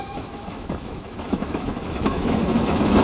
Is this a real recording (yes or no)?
no